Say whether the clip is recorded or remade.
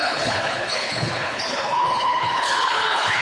remade